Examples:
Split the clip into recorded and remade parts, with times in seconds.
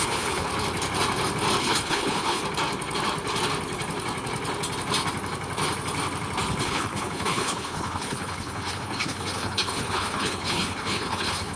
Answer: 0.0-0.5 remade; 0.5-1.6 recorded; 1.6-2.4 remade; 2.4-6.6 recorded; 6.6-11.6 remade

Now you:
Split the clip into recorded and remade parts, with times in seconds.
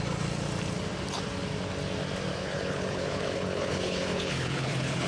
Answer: 0.0-2.3 recorded; 2.3-5.1 remade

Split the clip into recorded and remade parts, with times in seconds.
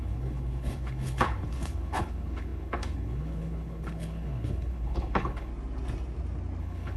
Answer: 0.0-5.5 remade; 5.5-6.6 recorded; 6.6-7.0 remade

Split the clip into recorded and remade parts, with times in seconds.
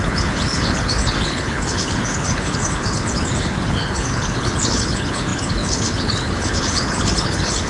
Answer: 0.0-7.7 remade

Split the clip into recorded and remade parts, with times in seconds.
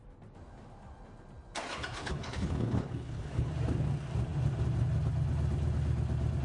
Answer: 0.0-1.9 recorded; 1.9-3.5 remade; 3.5-6.4 recorded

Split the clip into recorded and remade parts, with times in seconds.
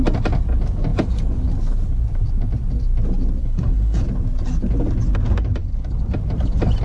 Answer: 0.0-3.4 recorded; 3.4-4.0 remade; 4.0-6.8 recorded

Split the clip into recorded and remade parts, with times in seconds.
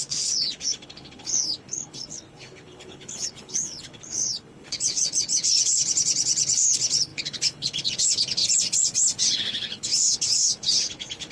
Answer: 0.0-8.4 remade; 8.4-9.2 recorded; 9.2-11.3 remade